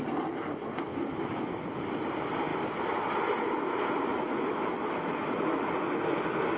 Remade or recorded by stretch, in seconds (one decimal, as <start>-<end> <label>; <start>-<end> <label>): 0.0-0.9 recorded; 0.9-1.9 remade; 1.9-4.1 recorded; 4.1-5.7 remade; 5.7-6.6 recorded